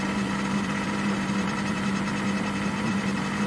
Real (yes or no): no